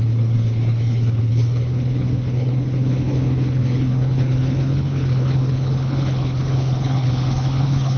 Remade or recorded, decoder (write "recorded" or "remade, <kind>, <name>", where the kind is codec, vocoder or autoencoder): remade, codec, HILCodec